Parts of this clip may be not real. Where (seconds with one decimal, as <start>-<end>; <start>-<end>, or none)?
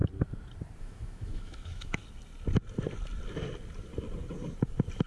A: 0.8-2.0